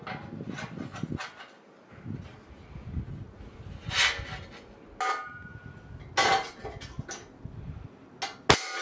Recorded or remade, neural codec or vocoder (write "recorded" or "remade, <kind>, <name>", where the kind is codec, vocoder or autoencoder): recorded